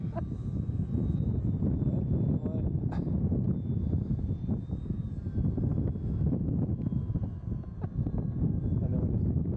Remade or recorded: recorded